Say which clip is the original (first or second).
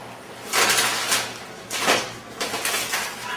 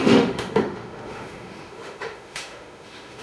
first